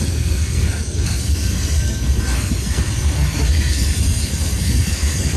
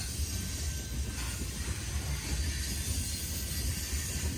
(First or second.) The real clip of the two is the second